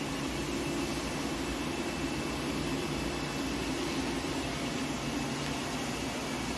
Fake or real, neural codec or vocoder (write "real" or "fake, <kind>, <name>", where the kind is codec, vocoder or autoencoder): real